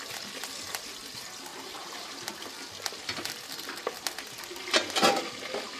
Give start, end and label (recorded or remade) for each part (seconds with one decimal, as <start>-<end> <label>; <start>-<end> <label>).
0.0-1.5 recorded; 1.5-2.3 remade; 2.3-5.8 recorded